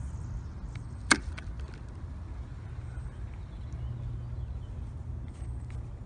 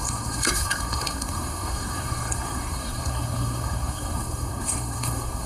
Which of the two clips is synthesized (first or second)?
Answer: second